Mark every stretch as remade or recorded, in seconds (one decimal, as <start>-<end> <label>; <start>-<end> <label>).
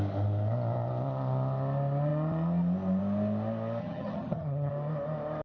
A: 0.0-3.8 recorded; 3.8-4.7 remade; 4.7-5.4 recorded